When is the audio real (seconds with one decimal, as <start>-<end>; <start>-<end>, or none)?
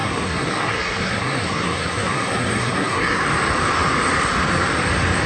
3.2-5.3